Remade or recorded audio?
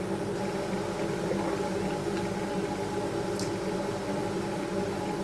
recorded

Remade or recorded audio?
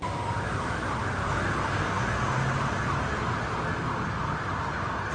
recorded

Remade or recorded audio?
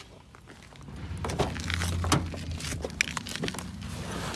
recorded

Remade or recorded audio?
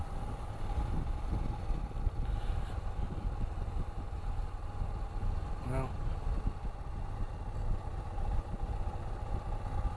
recorded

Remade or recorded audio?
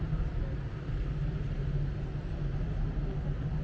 recorded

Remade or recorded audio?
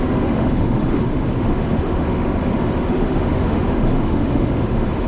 remade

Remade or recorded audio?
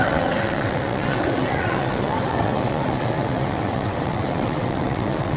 remade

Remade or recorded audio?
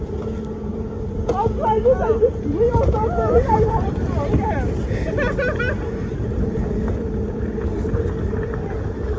recorded